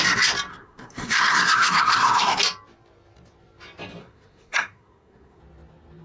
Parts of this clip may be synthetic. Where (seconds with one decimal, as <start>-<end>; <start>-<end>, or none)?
0.5-2.4; 4.0-5.4